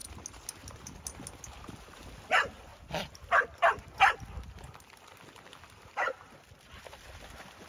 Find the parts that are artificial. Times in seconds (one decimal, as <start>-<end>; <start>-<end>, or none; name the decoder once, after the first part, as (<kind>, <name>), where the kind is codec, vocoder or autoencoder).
none